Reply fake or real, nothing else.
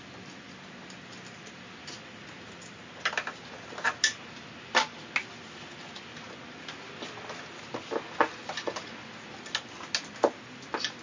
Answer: real